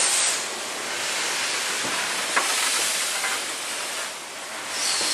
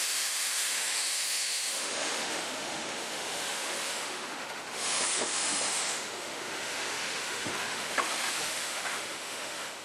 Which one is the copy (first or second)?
second